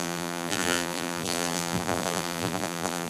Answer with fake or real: fake